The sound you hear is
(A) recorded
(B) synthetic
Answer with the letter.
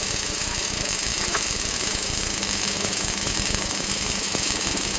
B